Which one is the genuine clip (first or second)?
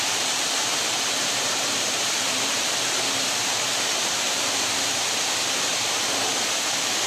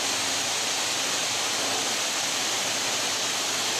second